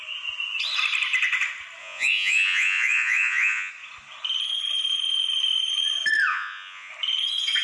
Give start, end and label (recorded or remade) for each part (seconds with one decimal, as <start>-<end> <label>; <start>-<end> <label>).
0.0-1.8 recorded; 1.8-3.7 remade; 3.7-6.3 recorded; 6.3-6.9 remade; 6.9-7.6 recorded